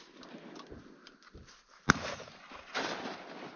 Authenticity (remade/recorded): recorded